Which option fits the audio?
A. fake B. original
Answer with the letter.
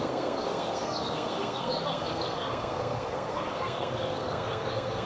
A